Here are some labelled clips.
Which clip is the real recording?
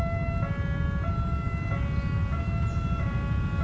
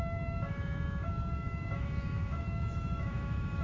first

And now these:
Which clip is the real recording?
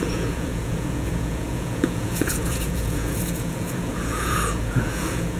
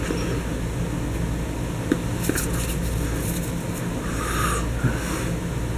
second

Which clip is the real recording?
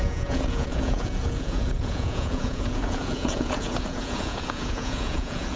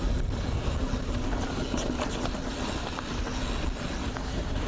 second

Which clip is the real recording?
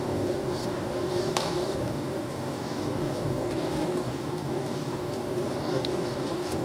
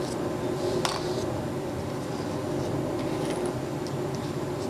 second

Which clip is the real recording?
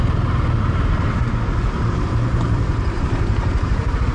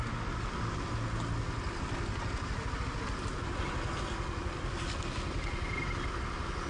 second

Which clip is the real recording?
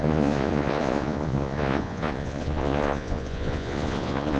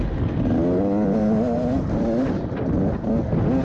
second